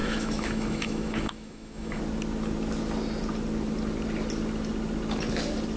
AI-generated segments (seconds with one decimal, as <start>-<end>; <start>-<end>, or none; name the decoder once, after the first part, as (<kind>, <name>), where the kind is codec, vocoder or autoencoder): 0.0-2.0 (autoencoder, DAC-VAE)